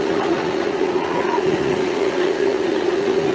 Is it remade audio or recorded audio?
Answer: remade